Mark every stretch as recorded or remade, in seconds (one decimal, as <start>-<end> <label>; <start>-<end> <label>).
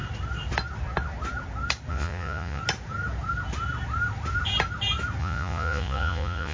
0.0-1.9 recorded; 1.9-2.6 remade; 2.6-5.2 recorded; 5.2-6.5 remade